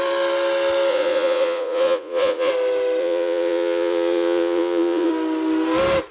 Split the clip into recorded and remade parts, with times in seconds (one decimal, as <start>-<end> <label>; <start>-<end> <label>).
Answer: 0.0-0.9 recorded; 0.9-2.5 remade; 2.5-3.0 recorded; 3.0-5.1 remade; 5.1-6.1 recorded